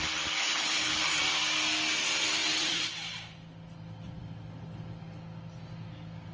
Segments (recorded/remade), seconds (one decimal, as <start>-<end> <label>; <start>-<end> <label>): 0.0-0.4 recorded; 0.4-1.0 remade; 1.0-6.3 recorded